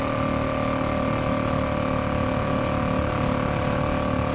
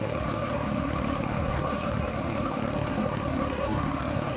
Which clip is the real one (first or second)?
first